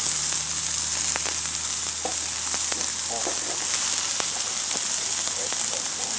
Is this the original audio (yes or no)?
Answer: yes